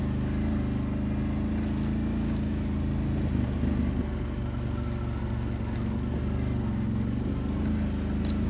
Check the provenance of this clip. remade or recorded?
recorded